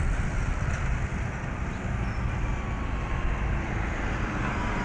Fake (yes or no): no